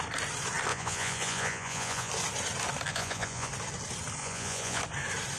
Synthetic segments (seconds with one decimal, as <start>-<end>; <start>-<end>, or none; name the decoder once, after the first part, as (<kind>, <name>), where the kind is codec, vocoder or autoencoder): 0.7-2.1 (vocoder, Vocos); 2.9-3.5; 4.2-4.8